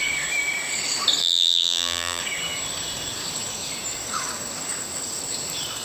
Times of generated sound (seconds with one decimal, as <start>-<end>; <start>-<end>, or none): 1.2-2.2